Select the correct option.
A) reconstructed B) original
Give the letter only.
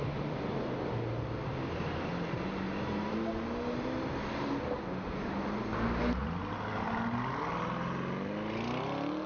B